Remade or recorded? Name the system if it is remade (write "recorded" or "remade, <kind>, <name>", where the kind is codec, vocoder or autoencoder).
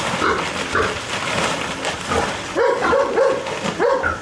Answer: remade, vocoder, BigVGAN v2